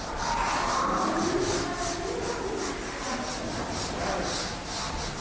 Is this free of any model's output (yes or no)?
yes